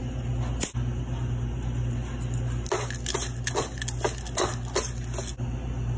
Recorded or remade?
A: recorded